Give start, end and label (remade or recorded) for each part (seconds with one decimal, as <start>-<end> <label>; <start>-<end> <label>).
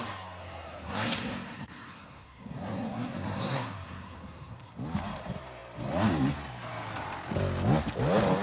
0.0-0.4 recorded; 0.4-4.7 remade; 4.7-8.4 recorded